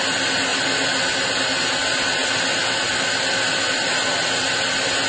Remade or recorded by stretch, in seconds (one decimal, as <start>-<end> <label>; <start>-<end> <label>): 0.0-5.1 recorded